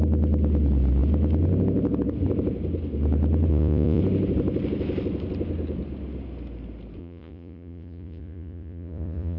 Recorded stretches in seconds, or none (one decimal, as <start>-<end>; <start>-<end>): 0.0-3.5; 4.0-7.0